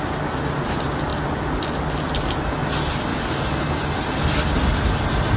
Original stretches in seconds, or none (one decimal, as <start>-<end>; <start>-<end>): 0.0-5.4